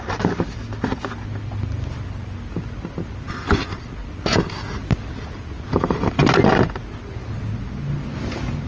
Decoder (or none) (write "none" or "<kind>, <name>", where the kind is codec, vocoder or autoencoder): none